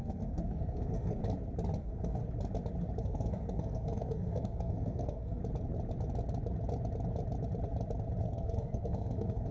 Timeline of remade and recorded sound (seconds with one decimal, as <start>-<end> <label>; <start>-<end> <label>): 0.0-1.2 remade; 1.2-1.8 recorded; 1.8-2.2 remade; 2.2-3.0 recorded; 3.0-5.4 remade; 5.4-8.2 recorded; 8.2-9.5 remade